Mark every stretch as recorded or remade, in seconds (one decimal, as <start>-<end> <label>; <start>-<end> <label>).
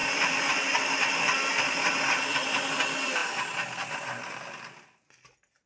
0.0-5.7 remade